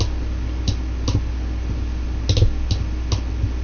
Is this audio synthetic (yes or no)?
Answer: no